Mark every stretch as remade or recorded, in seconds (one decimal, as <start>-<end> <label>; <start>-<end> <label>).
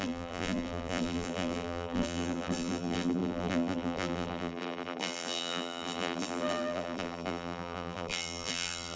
0.0-9.0 remade